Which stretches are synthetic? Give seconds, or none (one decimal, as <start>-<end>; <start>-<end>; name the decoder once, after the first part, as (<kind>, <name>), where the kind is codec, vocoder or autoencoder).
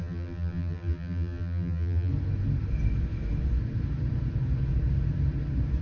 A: 0.0-2.1 (vocoder, BigVGAN v2)